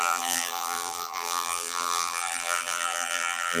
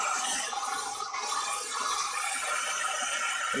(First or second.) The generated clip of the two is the first